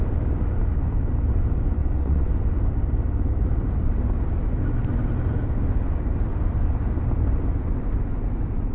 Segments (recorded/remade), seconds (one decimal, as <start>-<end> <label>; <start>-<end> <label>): 0.0-1.8 recorded; 1.8-2.3 remade; 2.3-8.7 recorded